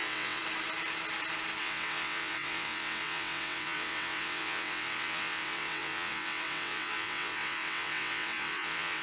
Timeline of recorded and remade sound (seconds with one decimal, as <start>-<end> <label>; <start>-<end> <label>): 0.0-0.4 remade; 0.4-1.6 recorded; 1.6-9.0 remade